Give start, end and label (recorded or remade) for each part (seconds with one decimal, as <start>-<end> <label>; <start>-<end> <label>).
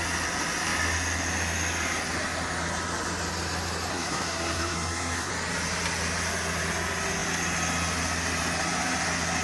0.0-3.9 recorded; 3.9-5.3 remade; 5.3-9.4 recorded